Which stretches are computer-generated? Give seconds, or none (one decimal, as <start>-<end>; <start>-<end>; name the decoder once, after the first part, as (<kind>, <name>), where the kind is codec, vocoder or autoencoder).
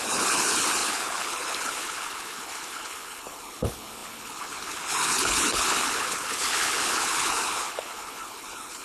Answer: 0.0-8.8 (codec, HILCodec)